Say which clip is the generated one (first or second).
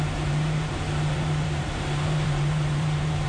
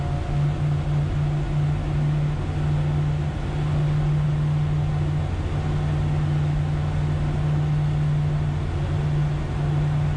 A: first